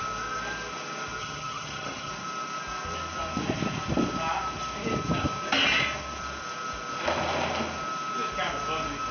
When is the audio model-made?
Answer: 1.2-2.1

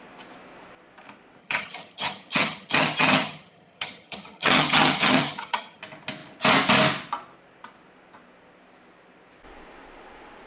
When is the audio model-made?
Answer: 1.4-5.8